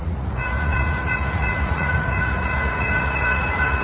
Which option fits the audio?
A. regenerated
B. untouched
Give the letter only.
A